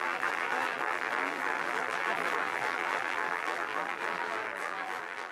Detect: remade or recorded remade